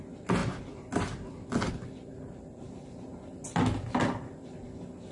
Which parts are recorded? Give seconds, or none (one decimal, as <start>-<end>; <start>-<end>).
0.0-5.1